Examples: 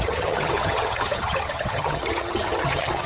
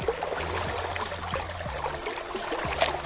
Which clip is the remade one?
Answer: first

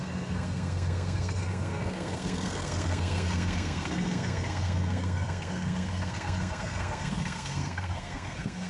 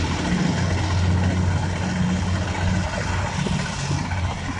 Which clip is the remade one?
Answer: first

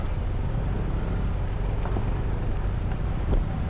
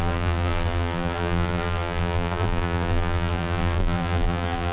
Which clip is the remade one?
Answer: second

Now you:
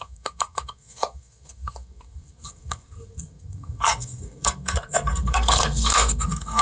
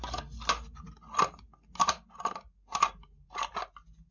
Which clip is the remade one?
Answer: first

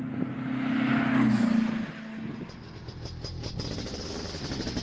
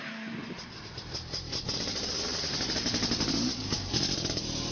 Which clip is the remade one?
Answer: second